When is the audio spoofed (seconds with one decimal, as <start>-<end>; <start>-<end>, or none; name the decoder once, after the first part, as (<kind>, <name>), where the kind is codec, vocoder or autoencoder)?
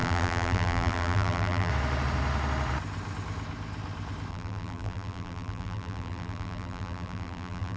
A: 0.0-1.7 (vocoder, BigVGAN v2); 4.3-7.8